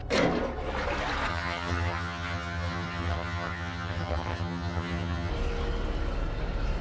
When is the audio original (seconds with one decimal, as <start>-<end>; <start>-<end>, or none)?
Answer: 0.0-1.3; 5.3-6.8